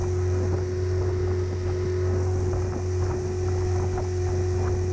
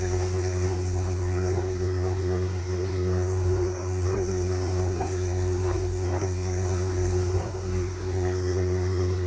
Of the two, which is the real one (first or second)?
first